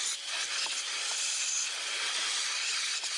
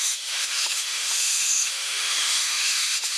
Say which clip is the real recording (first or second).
first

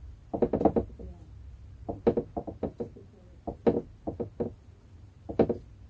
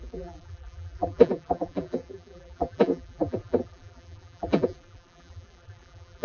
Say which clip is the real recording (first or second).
first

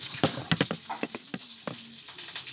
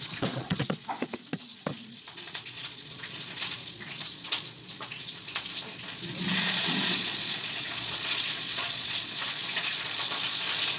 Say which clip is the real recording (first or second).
first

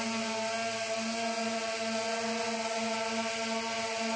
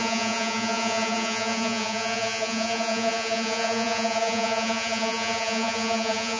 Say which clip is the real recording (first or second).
first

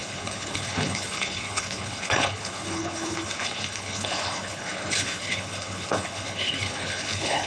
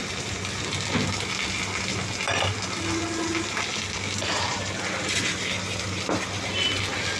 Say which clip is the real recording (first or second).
second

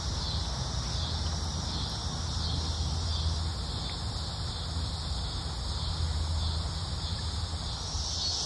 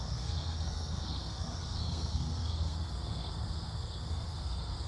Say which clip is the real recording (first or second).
first